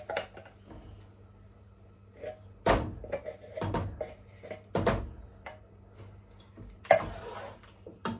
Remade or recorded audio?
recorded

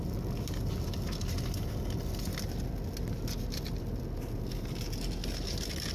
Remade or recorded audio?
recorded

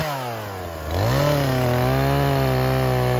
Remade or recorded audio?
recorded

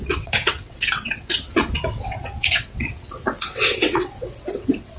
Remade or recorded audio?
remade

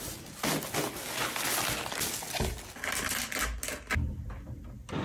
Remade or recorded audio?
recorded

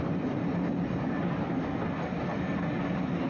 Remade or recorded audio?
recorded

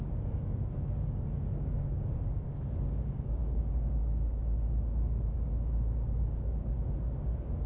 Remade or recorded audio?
remade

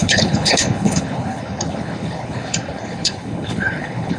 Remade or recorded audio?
remade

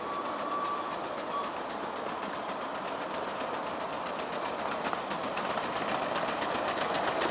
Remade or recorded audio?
remade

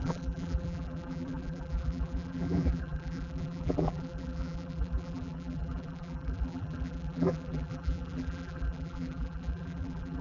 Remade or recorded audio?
remade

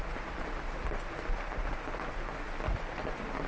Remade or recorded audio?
recorded